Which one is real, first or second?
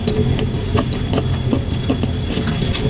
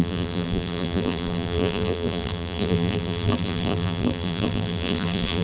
first